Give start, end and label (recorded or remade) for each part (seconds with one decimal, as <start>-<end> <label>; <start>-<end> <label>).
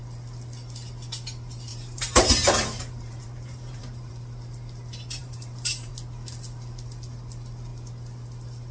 0.0-1.7 recorded; 1.7-4.1 remade; 4.1-5.2 recorded; 5.2-5.9 remade; 5.9-8.7 recorded